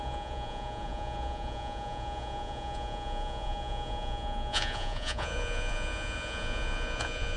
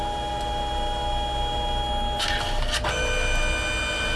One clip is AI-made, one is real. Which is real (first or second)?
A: second